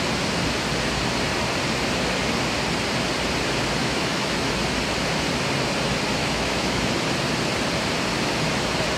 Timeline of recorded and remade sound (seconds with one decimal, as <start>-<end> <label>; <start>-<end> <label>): 0.0-3.8 recorded; 3.8-4.5 remade; 4.5-6.2 recorded; 6.2-6.8 remade; 6.8-9.0 recorded